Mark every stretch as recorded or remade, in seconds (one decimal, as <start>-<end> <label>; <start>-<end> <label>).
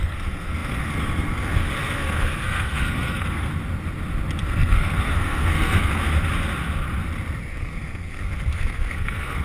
0.0-3.5 remade; 3.5-4.4 recorded; 4.4-6.0 remade; 6.0-7.5 recorded; 7.5-9.4 remade